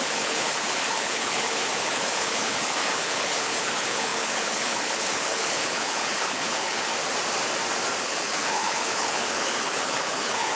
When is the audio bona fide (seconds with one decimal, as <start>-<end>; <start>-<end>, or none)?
6.9-8.0